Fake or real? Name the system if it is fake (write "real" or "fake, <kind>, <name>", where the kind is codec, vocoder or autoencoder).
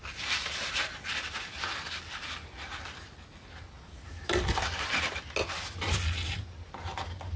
real